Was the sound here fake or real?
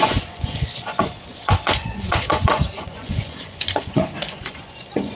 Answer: fake